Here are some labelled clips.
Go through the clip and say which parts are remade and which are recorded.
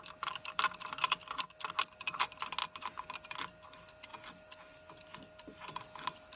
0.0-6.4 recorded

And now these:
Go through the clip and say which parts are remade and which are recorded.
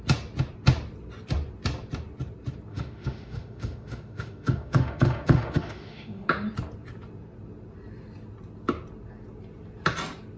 0.0-2.7 recorded; 2.7-6.3 remade; 6.3-10.4 recorded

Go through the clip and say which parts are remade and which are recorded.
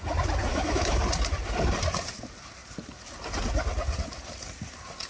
0.0-0.5 recorded; 0.5-1.0 remade; 1.0-5.1 recorded